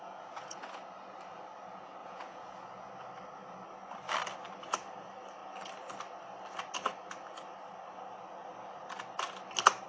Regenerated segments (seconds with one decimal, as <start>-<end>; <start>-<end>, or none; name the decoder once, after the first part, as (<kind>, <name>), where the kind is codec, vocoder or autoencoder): 0.0-0.8 (vocoder, Vocos); 2.0-2.9

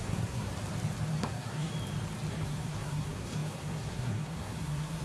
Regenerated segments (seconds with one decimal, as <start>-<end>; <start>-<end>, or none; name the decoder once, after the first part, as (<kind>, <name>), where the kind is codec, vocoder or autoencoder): 0.0-0.5 (codec, SNAC); 1.2-1.7; 2.3-5.0

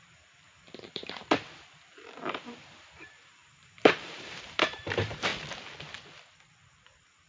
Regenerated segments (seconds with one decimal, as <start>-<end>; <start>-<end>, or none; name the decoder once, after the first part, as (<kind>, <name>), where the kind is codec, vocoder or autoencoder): 0.0-5.3 (vocoder, BigVGAN v2)

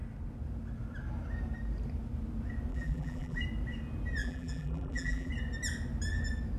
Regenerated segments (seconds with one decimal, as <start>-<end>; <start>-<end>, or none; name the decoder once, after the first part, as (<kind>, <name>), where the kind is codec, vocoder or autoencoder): 2.7-3.4 (vocoder, BigVGAN v2); 4.2-5.3

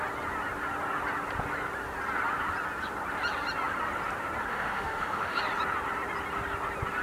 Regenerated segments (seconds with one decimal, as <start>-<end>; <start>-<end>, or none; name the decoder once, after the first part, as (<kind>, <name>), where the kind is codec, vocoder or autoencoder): 4.5-5.4 (autoencoder, DAC-VAE)

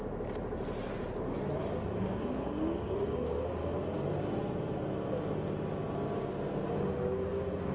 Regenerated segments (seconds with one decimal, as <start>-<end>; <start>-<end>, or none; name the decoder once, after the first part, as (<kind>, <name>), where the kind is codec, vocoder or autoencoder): 1.6-3.6 (codec, DAC); 7.3-7.7